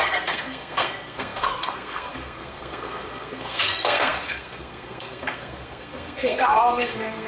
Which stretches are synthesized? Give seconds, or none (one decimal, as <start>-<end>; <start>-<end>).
0.0-7.3

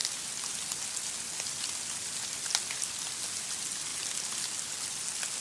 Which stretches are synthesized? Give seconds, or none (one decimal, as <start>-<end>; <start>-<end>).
none